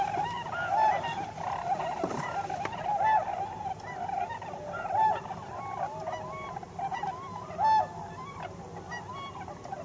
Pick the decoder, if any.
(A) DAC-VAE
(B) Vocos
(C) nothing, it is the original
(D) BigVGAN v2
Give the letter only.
C